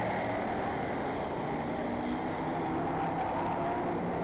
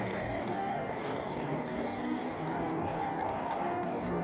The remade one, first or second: second